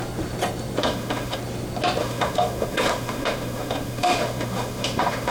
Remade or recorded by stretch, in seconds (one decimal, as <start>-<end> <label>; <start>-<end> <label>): 0.0-0.8 recorded; 0.8-1.4 remade; 1.4-2.0 recorded; 2.0-5.3 remade